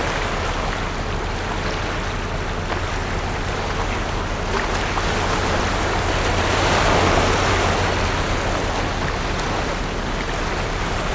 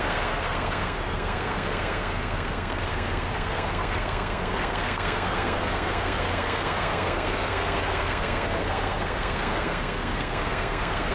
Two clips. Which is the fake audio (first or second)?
second